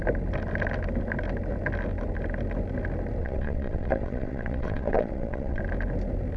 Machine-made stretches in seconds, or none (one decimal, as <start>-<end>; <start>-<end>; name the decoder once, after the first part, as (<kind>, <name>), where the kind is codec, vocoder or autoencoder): 3.2-5.6 (vocoder, WaveNeXt)